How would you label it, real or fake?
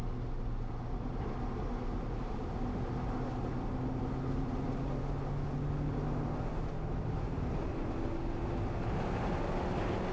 real